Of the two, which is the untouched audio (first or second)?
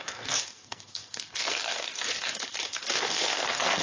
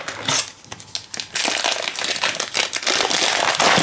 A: second